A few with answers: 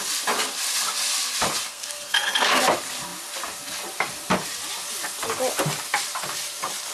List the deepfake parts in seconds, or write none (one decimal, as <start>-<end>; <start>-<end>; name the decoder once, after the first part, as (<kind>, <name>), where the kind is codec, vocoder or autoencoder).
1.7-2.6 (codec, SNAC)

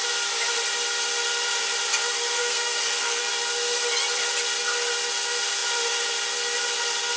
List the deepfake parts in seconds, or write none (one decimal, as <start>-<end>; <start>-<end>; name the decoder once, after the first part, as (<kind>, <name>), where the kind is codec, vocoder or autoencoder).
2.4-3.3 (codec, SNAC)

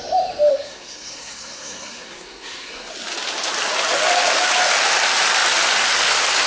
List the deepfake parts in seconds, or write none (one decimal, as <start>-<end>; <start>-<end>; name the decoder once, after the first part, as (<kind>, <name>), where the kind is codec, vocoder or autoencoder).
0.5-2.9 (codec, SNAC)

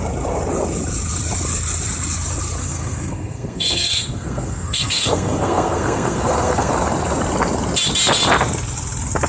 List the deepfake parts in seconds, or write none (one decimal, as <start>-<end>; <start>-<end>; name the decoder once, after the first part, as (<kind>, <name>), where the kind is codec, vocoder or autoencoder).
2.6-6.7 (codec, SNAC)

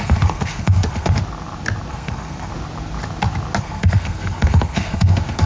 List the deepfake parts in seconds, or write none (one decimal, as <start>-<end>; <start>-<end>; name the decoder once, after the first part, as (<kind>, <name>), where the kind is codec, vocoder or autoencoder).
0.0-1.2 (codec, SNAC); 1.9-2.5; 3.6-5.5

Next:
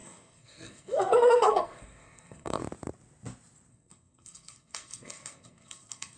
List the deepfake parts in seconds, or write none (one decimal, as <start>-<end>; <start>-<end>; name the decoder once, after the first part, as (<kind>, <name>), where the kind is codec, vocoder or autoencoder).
0.0-2.6 (codec, SNAC); 3.7-6.2